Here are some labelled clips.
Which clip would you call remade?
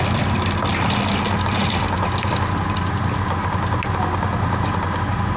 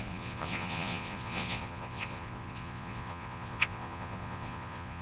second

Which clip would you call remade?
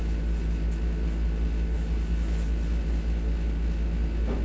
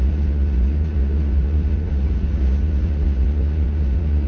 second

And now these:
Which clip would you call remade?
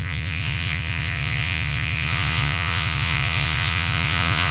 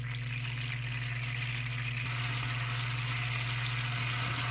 first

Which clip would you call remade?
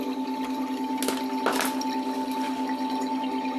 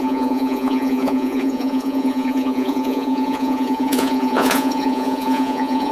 second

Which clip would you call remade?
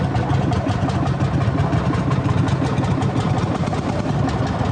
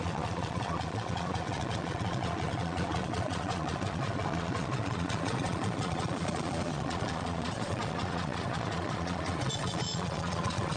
second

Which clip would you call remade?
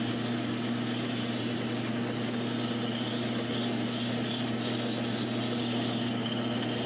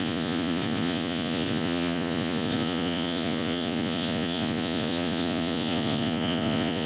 second